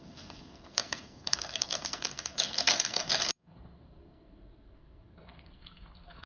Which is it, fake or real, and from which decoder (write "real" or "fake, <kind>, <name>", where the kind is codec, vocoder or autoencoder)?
fake, codec, SNAC